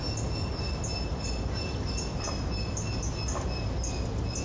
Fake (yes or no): no